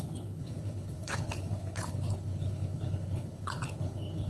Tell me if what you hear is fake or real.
fake